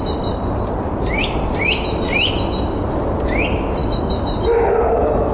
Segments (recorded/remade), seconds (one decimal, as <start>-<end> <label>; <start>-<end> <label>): 0.0-5.3 recorded